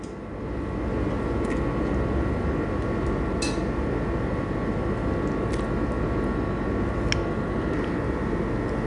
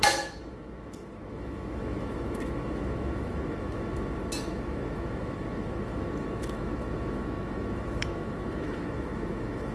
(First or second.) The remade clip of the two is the second